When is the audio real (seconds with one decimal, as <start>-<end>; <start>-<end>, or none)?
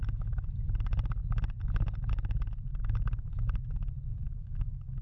0.6-2.7; 3.4-4.1